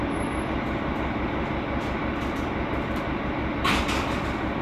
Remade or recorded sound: recorded